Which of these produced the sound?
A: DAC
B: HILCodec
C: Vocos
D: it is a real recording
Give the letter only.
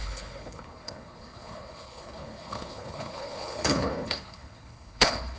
B